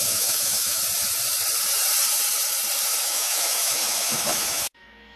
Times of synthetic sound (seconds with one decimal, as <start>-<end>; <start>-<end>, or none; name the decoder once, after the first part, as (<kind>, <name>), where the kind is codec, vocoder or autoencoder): 0.0-0.8 (autoencoder, DAC-VAE); 3.0-5.2